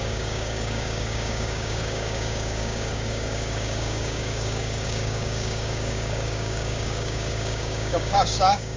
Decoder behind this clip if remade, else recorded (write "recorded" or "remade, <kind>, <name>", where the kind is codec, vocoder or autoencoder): remade, codec, DAC